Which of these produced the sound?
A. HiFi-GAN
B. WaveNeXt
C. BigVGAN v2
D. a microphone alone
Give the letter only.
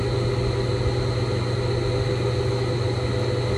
D